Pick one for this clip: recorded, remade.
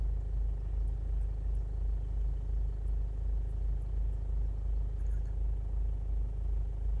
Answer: recorded